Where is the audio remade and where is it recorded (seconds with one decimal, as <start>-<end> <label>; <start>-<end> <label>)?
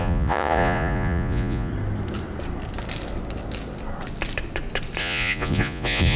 0.0-1.7 remade; 1.7-5.0 recorded; 5.0-6.2 remade